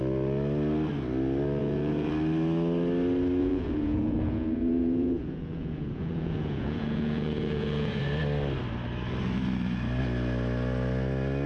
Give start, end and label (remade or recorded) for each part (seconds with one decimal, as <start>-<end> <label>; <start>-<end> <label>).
0.0-1.6 recorded; 1.6-2.1 remade; 2.1-3.4 recorded; 3.4-8.0 remade; 8.0-11.5 recorded